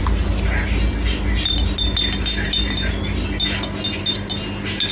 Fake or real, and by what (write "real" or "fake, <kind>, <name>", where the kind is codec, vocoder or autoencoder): real